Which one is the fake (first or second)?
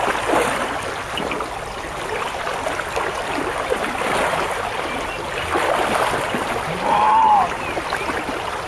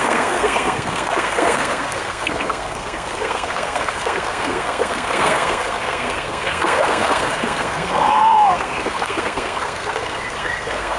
second